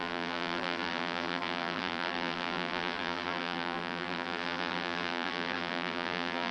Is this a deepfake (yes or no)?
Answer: yes